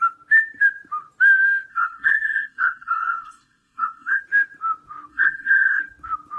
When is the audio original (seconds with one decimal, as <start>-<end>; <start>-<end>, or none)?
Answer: 0.0-1.7; 4.2-5.1; 5.8-6.4